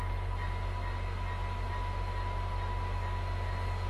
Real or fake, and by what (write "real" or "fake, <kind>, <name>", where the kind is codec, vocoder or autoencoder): real